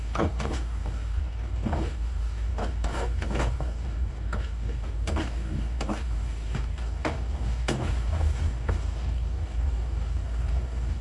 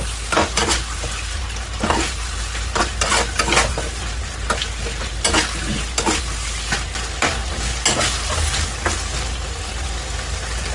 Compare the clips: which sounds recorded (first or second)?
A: second